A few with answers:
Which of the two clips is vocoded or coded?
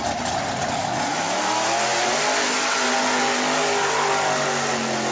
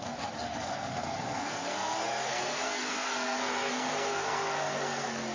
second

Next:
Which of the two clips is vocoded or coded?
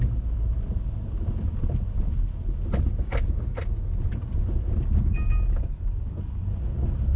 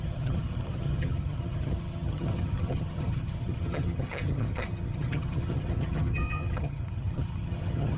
second